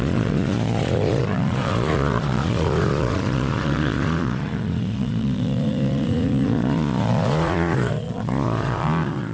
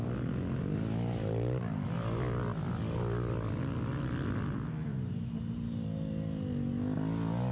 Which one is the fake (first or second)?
first